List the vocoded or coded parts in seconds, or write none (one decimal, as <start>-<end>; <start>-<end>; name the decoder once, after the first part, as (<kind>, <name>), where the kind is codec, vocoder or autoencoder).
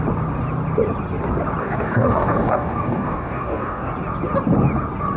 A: 1.6-3.9 (codec, DAC)